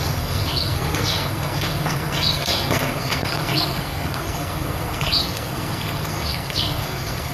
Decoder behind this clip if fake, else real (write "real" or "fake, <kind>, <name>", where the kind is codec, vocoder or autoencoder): fake, codec, SNAC